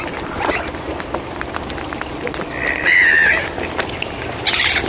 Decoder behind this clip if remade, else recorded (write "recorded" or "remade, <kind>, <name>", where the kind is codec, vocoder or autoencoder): recorded